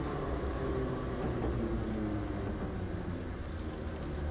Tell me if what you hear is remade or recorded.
recorded